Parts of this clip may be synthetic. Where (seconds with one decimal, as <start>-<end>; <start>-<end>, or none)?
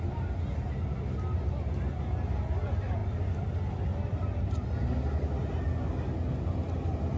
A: none